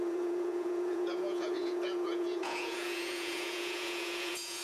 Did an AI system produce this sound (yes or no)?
yes